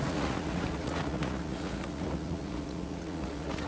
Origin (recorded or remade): remade